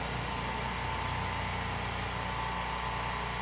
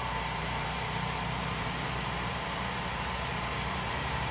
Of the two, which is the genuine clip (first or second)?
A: first